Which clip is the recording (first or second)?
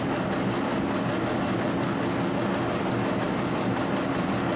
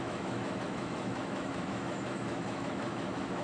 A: first